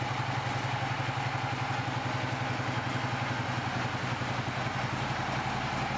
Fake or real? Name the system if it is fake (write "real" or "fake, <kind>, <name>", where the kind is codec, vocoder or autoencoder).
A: real